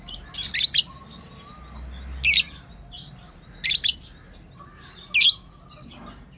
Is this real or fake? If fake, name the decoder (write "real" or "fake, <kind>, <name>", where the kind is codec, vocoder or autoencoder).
real